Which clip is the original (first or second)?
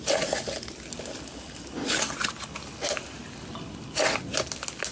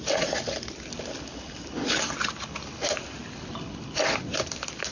first